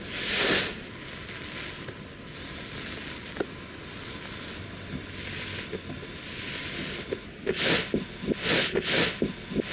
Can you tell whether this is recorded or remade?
recorded